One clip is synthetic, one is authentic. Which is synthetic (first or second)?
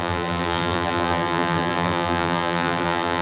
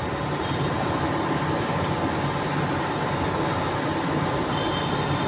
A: first